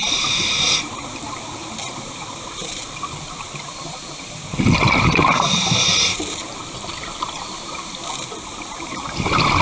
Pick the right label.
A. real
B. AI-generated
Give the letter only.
B